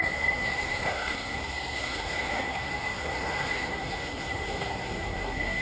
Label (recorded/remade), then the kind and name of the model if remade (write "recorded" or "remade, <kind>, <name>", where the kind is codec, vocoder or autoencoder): remade, codec, SNAC